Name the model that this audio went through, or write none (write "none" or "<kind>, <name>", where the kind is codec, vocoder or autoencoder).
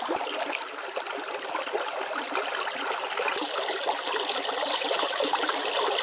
none